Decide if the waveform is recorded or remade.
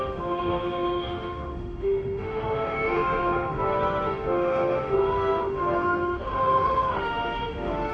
remade